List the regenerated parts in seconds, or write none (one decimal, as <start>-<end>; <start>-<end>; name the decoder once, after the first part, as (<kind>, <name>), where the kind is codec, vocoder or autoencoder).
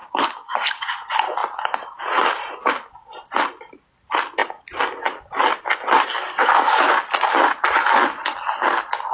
0.0-0.8 (codec, DAC)